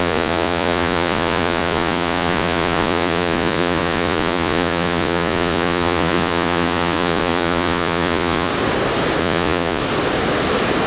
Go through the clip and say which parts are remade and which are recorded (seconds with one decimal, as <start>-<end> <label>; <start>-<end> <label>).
0.0-8.5 remade; 8.5-9.2 recorded; 9.2-9.8 remade; 9.8-10.9 recorded